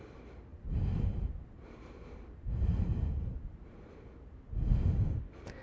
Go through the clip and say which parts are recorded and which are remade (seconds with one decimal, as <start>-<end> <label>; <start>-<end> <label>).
0.0-0.5 recorded; 0.5-3.9 remade; 3.9-5.6 recorded